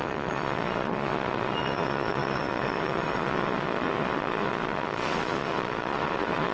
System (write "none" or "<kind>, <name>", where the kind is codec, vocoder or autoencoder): vocoder, Vocos